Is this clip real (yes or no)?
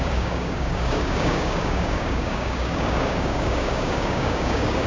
no